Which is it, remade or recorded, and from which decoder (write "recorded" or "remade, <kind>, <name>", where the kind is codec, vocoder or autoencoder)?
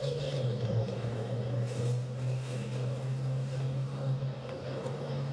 remade, codec, DAC